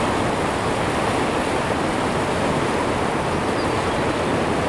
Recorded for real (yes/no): yes